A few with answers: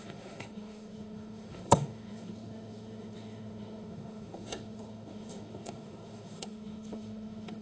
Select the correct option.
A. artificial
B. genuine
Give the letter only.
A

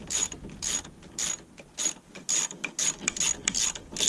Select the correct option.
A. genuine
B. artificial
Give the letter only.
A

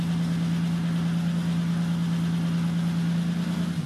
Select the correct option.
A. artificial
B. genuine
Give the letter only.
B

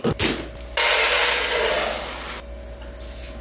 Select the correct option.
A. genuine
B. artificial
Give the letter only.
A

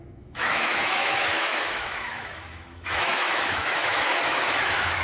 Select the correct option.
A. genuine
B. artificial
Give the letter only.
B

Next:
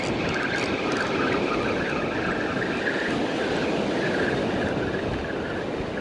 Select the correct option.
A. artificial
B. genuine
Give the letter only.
B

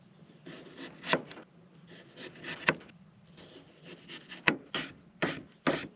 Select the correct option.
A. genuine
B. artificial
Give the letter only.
A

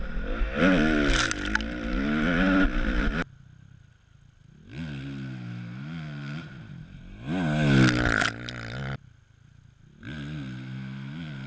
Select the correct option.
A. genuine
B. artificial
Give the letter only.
A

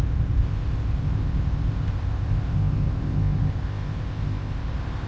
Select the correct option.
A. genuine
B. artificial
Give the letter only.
B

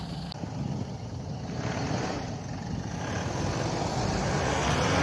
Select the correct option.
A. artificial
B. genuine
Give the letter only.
B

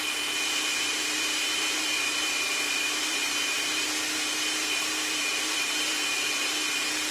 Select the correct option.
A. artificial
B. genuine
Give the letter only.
A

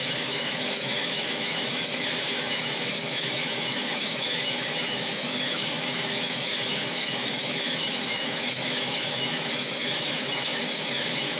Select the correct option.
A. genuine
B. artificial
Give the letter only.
B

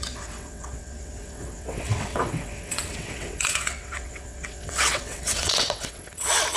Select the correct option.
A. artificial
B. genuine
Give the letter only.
A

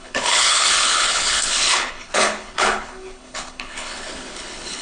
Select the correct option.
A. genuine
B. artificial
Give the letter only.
B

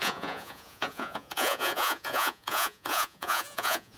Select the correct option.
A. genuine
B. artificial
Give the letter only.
B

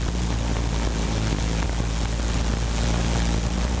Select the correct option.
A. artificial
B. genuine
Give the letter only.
B